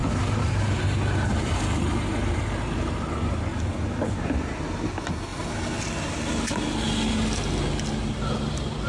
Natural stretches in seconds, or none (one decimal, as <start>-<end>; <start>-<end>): 0.0-8.9